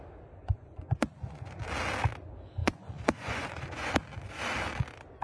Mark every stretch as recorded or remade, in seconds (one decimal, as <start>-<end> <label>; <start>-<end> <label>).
0.0-0.4 recorded; 0.4-1.6 remade; 1.6-2.6 recorded; 2.6-3.9 remade; 3.9-5.2 recorded